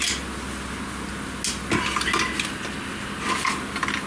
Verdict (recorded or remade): recorded